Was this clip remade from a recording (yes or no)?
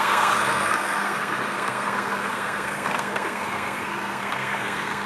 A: yes